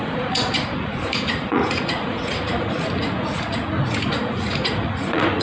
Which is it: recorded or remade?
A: remade